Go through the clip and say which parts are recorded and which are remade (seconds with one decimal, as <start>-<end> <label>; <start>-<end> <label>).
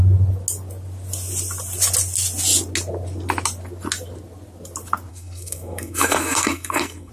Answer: 0.0-5.1 recorded; 5.1-7.1 remade